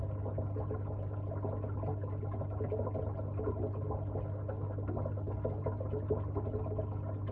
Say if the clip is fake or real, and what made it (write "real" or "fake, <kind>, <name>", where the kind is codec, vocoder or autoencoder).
real